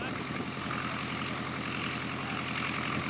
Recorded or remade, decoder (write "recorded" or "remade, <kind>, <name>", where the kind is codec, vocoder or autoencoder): recorded